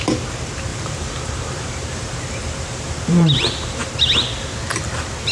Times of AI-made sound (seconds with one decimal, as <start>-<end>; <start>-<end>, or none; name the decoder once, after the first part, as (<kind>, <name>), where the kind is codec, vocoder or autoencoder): 0.7-3.9 (vocoder, BigVGAN v2)